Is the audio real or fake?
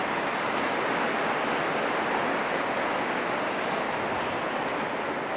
real